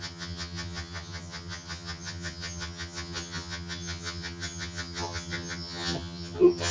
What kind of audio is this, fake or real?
fake